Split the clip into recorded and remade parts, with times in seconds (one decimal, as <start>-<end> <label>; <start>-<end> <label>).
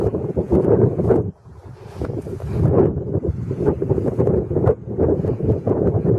0.0-1.6 remade; 1.6-4.0 recorded; 4.0-6.2 remade